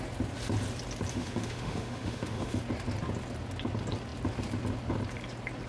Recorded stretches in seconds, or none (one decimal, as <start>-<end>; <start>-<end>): 0.0-1.1; 2.6-5.7